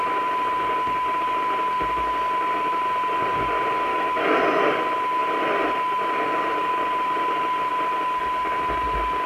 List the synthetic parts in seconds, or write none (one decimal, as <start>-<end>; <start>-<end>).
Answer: 3.9-4.4